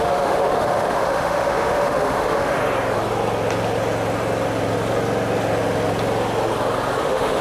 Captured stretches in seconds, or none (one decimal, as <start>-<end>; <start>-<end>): 2.6-7.0